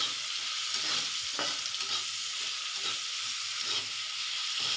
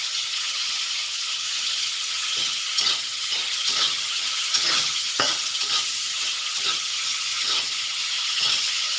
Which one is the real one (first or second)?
first